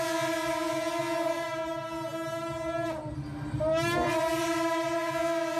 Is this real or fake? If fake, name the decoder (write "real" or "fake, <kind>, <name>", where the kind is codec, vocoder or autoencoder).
real